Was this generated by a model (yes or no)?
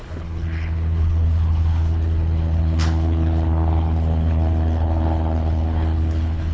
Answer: yes